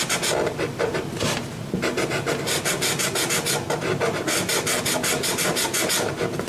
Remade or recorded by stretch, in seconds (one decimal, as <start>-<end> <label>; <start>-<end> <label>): 0.0-6.5 recorded